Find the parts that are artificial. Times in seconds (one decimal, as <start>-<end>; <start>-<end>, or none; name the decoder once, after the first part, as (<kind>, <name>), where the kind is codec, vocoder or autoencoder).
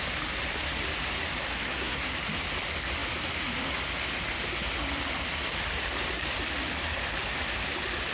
1.5-2.1 (codec, SNAC)